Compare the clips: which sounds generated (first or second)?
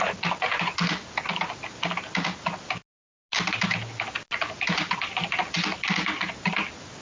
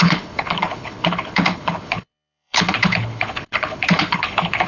second